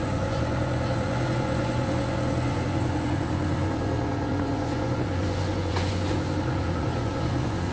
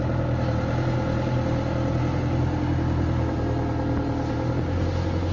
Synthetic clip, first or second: first